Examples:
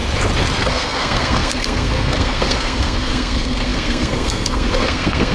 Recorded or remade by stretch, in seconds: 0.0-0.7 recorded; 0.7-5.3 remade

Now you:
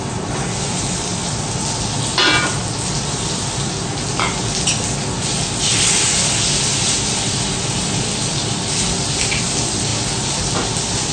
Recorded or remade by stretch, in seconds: 0.0-11.1 recorded

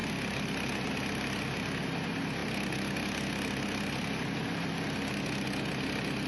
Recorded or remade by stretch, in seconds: 0.0-6.3 recorded

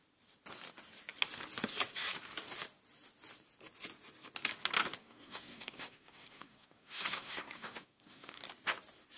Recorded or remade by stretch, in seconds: 0.0-5.0 recorded; 5.0-8.4 remade; 8.4-9.2 recorded

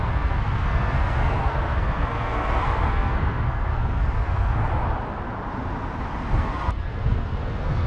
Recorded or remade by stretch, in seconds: 0.0-4.6 remade; 4.6-6.3 recorded; 6.3-7.9 remade